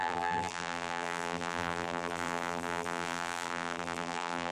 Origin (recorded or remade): remade